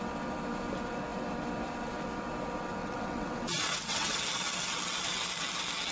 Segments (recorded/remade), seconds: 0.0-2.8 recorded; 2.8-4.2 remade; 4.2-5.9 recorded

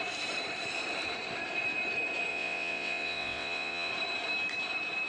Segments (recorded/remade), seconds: 0.0-2.3 recorded; 2.3-3.9 remade; 3.9-5.1 recorded

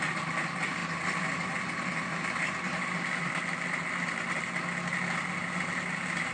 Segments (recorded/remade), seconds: 0.0-6.3 recorded